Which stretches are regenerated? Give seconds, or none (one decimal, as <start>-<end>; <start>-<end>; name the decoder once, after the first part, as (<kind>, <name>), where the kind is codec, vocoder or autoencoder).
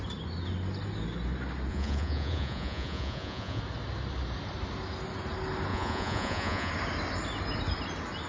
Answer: 1.7-3.6 (vocoder, Vocos); 5.7-6.7